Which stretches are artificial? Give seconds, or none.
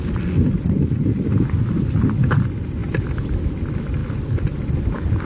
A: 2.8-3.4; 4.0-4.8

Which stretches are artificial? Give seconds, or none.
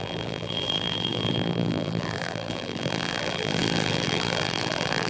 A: 0.0-5.1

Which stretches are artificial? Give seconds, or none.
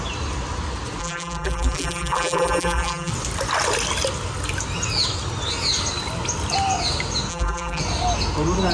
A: 1.0-3.1; 7.3-7.8